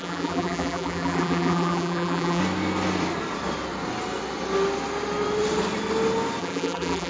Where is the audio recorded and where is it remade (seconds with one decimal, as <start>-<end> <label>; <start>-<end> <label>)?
0.0-2.4 remade; 2.4-6.4 recorded; 6.4-7.1 remade